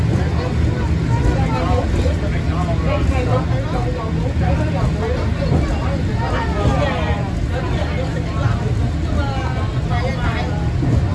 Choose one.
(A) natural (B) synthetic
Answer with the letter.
A